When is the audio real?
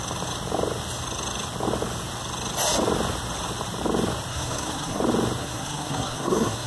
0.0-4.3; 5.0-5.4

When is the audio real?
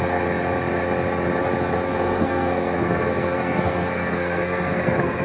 0.0-1.9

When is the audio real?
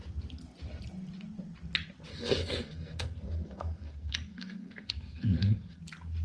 0.0-2.1; 5.8-6.2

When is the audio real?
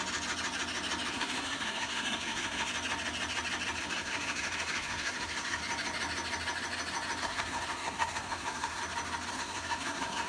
0.0-1.1; 2.7-3.8; 5.6-7.2; 8.8-9.3